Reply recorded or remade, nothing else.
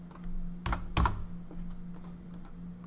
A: recorded